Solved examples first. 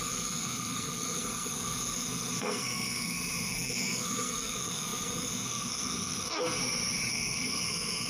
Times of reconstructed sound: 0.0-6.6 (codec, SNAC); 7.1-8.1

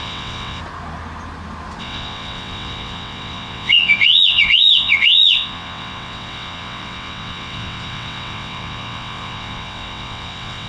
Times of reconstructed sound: 0.0-0.6 (vocoder, WaveNeXt); 1.8-10.7

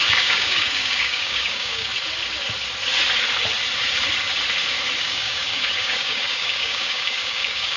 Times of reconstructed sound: 0.0-1.9 (codec, DAC); 5.0-7.8